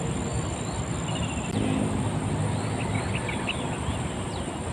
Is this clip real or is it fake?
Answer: real